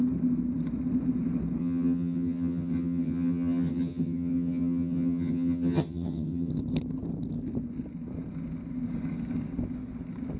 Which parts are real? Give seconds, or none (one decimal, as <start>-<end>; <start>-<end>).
0.0-1.6; 6.5-10.4